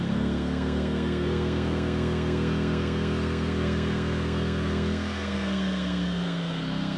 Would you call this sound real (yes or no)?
no